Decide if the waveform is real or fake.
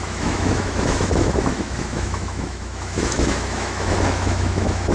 fake